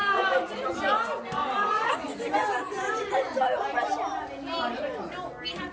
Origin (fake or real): real